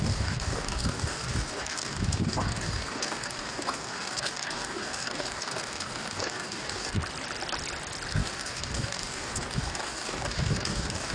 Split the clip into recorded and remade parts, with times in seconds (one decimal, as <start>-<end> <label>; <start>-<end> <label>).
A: 0.0-7.0 remade; 7.0-8.1 recorded; 8.1-11.1 remade